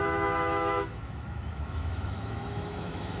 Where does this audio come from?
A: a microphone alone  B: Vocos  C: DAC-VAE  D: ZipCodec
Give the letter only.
C